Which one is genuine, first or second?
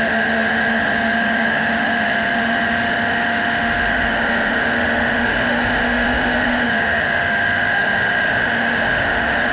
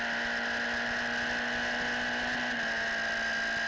second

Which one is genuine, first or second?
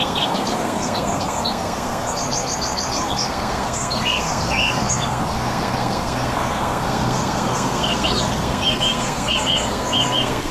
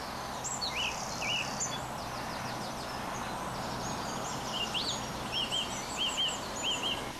second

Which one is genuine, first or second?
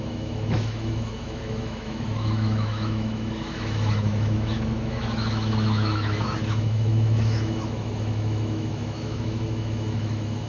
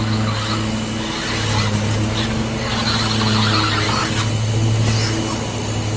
second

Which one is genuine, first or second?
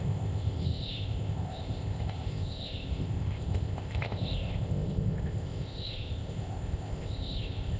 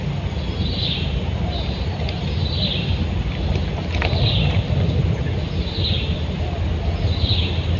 second